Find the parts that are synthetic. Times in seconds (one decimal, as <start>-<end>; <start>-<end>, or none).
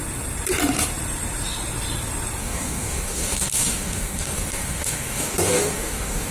2.4-6.3